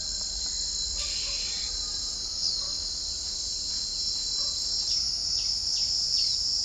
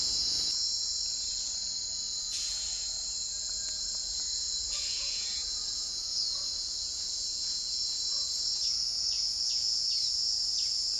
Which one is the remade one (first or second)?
second